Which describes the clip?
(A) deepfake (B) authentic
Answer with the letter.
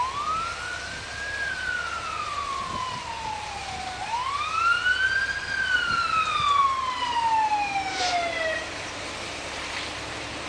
B